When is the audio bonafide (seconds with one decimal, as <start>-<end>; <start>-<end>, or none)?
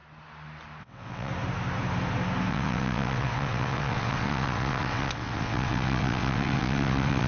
0.0-0.8; 1.3-2.5